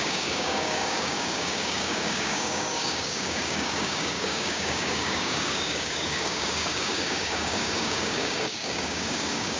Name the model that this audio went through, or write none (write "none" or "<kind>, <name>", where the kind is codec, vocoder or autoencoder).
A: codec, DAC